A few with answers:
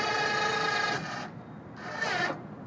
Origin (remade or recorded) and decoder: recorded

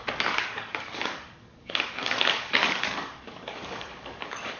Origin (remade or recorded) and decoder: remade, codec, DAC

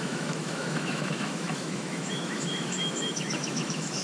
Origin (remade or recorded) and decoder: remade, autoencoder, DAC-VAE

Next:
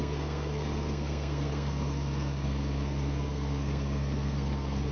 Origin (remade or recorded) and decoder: remade, codec, SNAC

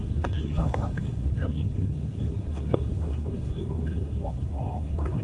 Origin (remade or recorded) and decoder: remade, codec, SNAC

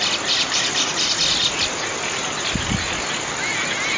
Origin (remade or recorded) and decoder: recorded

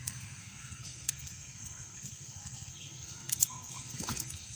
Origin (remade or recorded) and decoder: remade, codec, SNAC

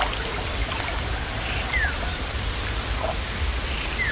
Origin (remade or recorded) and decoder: recorded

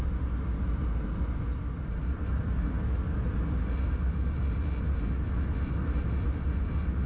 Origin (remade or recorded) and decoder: recorded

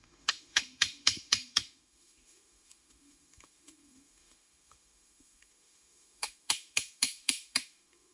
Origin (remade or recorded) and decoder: remade, autoencoder, DAC-VAE